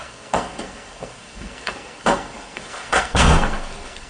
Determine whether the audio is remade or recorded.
remade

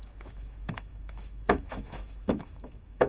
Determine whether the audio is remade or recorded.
remade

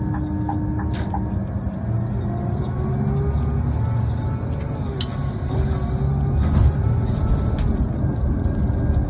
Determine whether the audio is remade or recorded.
recorded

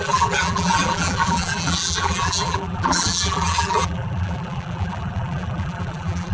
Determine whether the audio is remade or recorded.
remade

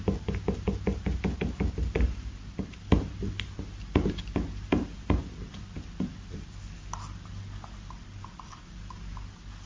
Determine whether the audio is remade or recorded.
recorded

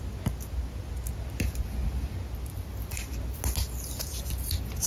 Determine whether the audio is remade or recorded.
recorded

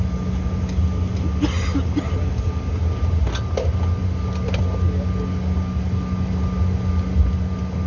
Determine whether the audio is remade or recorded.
recorded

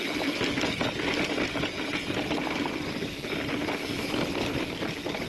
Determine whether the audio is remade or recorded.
recorded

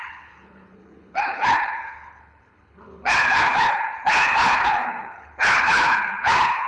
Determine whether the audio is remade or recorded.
remade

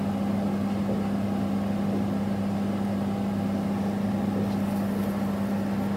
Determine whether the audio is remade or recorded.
recorded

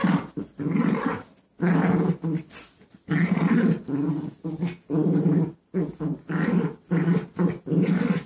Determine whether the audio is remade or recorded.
recorded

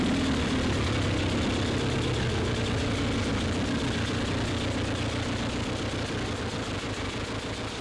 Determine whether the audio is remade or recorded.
recorded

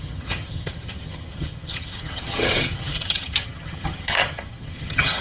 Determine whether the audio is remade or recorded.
remade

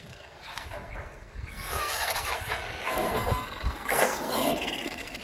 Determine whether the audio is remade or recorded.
remade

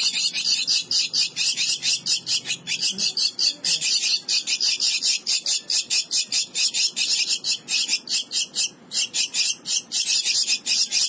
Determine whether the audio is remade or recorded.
recorded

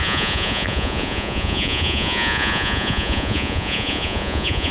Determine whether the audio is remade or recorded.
remade